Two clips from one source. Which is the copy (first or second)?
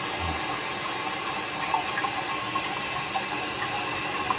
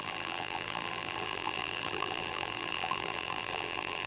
second